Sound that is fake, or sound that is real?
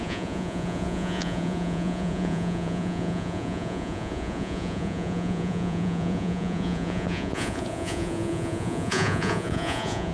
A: fake